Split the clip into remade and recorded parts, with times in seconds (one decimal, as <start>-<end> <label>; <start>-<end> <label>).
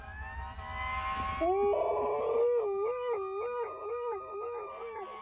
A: 0.0-5.2 recorded